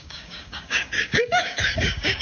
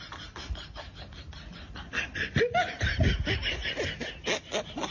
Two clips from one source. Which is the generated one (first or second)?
first